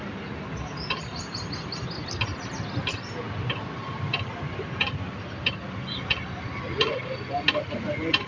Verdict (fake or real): real